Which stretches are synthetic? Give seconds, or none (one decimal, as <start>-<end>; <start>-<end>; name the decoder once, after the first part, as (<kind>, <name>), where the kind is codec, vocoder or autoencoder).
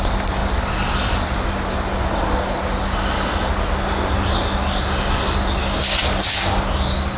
none